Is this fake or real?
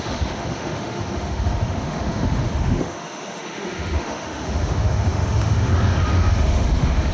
fake